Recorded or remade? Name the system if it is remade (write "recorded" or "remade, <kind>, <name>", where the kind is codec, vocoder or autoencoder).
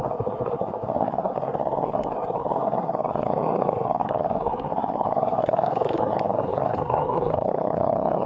remade, codec, SNAC